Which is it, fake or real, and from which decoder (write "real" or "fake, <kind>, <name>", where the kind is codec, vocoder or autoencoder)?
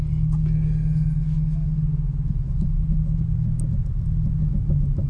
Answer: real